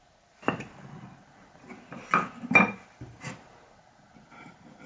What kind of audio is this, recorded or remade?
recorded